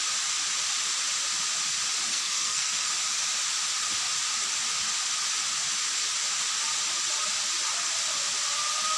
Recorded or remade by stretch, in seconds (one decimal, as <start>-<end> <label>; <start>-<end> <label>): 0.0-2.1 recorded; 2.1-2.9 remade; 2.9-9.0 recorded